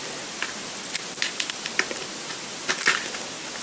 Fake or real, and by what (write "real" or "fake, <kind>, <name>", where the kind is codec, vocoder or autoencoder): real